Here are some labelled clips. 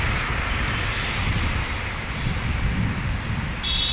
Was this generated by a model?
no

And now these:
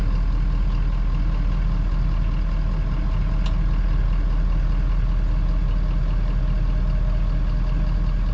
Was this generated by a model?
no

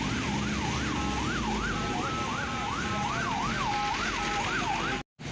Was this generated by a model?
no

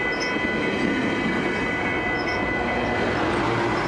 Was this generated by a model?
no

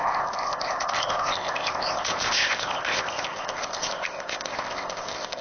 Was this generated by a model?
yes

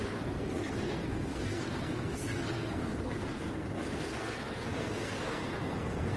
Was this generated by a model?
yes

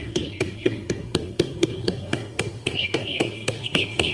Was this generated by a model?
yes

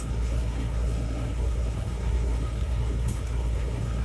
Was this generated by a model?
yes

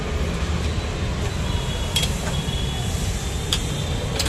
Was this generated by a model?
no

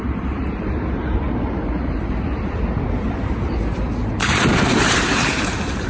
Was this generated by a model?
yes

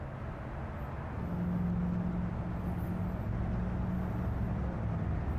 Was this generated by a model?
no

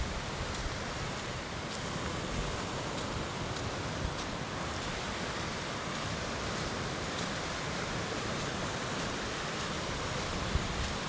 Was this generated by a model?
no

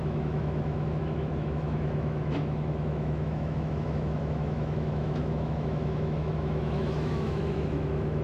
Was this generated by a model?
yes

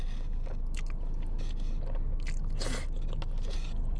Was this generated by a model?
no